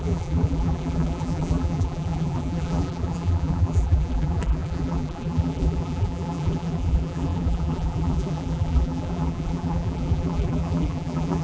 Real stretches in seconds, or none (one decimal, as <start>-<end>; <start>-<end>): none